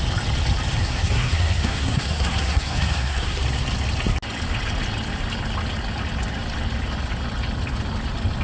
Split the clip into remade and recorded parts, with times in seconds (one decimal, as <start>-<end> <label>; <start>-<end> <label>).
0.0-0.8 recorded; 0.8-3.4 remade; 3.4-8.4 recorded